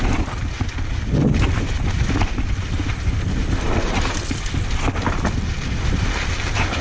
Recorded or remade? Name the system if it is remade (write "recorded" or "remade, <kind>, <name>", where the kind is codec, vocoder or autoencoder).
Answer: recorded